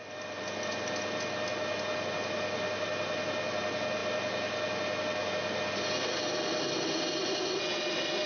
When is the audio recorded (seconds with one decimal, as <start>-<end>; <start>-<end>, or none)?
0.0-8.3